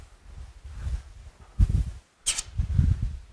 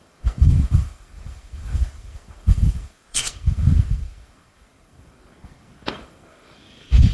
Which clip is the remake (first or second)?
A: second